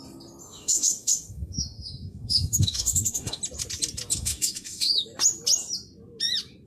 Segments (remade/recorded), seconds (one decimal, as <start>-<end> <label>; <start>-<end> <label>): 0.0-0.4 recorded; 0.4-3.4 remade; 3.4-4.1 recorded; 4.1-5.0 remade; 5.0-6.7 recorded